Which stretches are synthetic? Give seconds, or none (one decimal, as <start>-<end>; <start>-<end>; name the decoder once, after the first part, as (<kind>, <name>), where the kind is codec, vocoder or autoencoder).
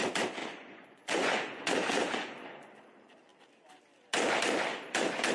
0.4-2.7 (vocoder, Vocos)